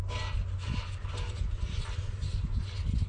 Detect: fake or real real